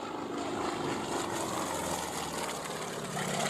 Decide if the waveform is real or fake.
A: real